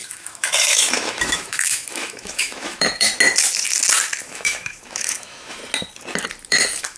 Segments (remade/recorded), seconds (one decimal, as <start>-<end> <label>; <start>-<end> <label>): 0.0-3.1 remade; 3.1-4.2 recorded; 4.2-5.6 remade; 5.6-6.5 recorded; 6.5-7.0 remade